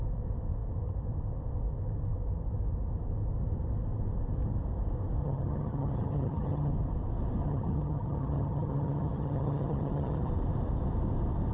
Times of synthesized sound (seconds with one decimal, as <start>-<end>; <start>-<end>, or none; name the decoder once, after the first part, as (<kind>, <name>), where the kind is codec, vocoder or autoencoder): 5.2-6.7 (vocoder, HiFi-GAN); 7.4-10.3